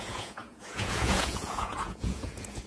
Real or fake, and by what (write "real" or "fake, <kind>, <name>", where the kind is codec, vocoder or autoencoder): fake, vocoder, Vocos